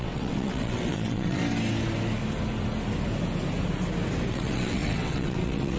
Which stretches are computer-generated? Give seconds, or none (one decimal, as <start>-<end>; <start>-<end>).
0.0-1.4; 4.3-5.8